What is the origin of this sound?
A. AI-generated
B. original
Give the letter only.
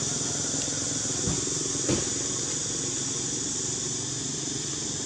B